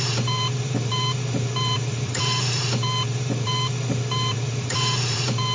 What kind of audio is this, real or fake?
fake